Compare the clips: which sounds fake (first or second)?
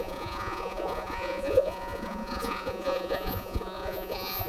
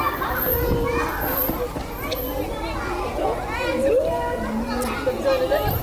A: first